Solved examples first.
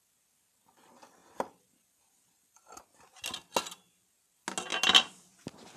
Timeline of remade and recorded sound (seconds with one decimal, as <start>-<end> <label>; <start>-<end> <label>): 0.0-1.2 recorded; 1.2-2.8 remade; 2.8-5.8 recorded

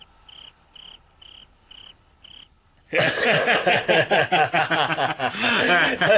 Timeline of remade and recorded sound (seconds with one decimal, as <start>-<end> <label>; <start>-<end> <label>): 0.0-6.2 recorded

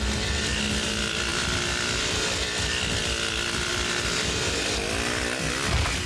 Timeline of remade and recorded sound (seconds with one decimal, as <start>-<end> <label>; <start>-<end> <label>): 0.0-6.1 recorded